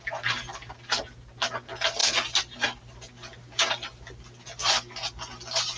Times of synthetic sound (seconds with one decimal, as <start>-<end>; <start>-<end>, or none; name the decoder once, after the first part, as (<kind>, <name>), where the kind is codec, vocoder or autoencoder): none